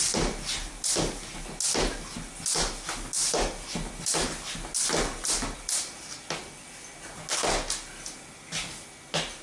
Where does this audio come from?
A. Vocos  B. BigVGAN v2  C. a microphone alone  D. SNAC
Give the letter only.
C